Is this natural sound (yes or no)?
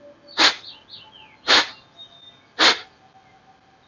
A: yes